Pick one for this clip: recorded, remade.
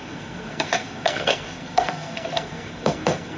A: remade